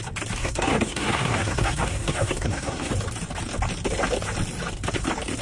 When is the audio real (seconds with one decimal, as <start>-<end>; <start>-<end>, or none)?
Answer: 0.0-0.4; 2.9-5.4